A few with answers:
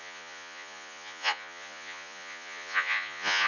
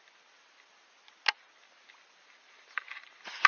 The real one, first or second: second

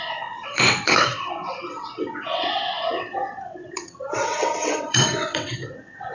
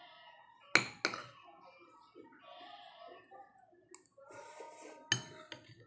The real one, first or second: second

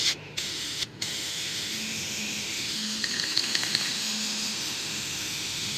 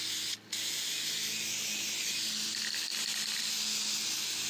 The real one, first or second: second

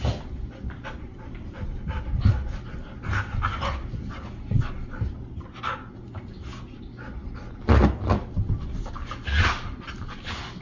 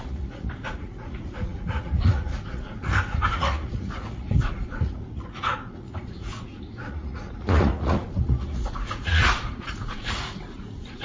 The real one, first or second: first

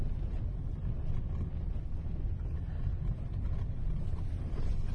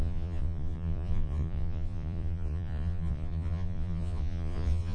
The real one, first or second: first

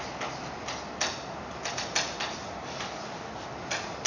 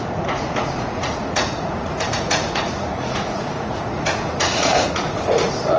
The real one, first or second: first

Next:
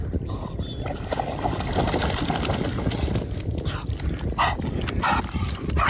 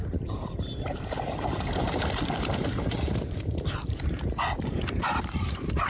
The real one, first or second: first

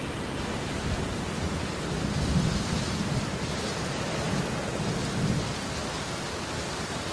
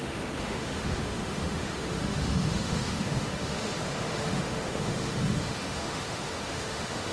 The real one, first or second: first